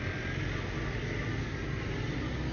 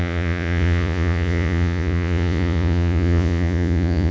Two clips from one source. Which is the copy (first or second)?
second